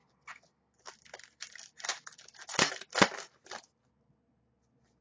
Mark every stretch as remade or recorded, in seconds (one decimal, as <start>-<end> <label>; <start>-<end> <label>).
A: 0.0-5.0 recorded